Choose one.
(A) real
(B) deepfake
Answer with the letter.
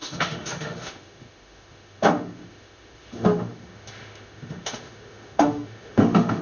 B